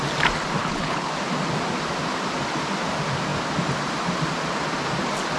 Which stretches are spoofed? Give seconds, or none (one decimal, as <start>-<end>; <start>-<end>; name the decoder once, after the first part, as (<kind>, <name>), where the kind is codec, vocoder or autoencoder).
0.6-1.1 (codec, HILCodec)